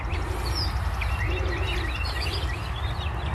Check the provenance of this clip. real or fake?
real